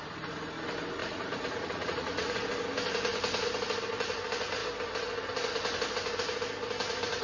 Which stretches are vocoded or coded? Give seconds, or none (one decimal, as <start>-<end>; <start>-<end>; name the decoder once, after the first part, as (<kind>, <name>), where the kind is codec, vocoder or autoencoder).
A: 1.0-2.3 (vocoder, Vocos)